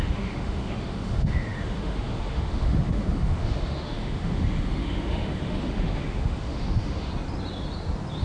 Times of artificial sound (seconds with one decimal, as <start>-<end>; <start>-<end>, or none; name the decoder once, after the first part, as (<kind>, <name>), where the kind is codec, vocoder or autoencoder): 0.0-7.1 (autoencoder, DAC-VAE)